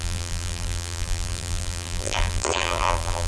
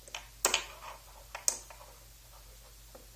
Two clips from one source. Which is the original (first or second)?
second